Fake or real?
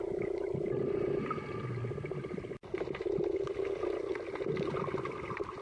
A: real